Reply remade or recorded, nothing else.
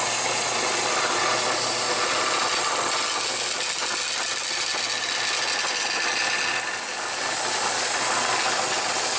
recorded